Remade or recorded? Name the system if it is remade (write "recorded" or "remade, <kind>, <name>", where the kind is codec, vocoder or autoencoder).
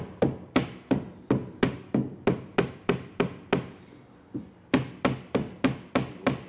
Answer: recorded